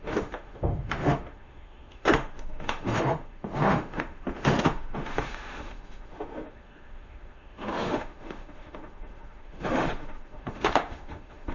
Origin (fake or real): fake